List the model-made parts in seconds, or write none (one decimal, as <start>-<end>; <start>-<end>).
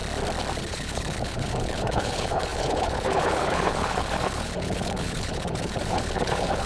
0.6-6.7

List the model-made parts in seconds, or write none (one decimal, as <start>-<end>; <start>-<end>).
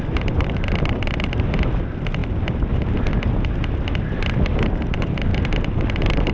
none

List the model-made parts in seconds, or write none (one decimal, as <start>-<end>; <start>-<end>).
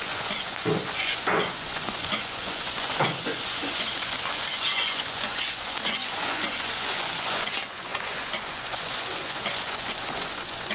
0.0-10.7